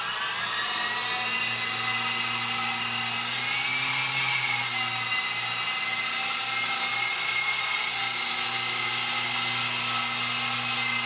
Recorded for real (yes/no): yes